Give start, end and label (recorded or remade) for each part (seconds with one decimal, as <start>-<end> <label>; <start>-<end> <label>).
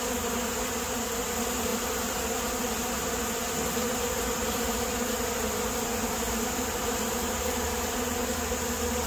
0.0-9.1 recorded